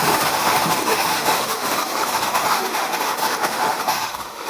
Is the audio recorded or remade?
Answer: remade